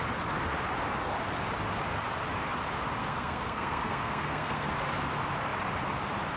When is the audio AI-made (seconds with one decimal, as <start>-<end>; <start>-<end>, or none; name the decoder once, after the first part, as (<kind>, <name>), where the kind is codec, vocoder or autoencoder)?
3.0-4.7 (codec, SNAC)